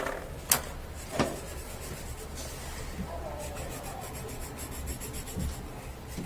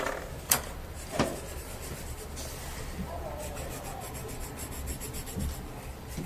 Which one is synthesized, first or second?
second